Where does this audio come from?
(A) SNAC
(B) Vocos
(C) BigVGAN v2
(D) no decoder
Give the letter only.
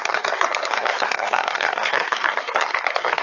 A